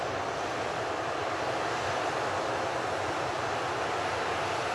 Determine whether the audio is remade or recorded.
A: recorded